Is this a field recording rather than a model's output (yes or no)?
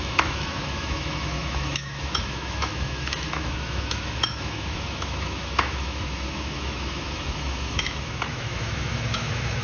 no